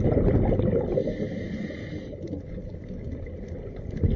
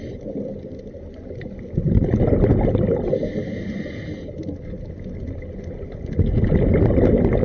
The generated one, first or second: first